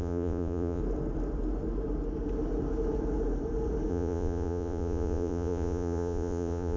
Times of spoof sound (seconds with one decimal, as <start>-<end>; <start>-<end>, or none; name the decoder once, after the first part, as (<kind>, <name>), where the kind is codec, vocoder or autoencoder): 0.0-0.8 (vocoder, Vocos); 3.9-6.8